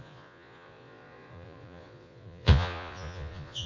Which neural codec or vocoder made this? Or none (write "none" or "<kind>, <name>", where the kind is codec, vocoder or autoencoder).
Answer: vocoder, Vocos